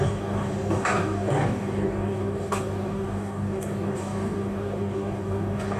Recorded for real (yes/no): no